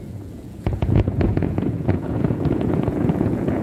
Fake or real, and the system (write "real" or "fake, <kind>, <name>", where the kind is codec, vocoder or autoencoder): fake, vocoder, Vocos